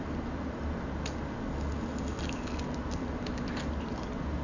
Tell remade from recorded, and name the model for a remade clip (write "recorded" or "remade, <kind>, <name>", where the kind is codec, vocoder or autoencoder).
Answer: recorded